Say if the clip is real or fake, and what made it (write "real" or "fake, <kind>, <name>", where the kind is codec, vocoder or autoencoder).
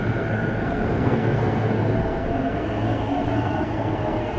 fake, codec, SNAC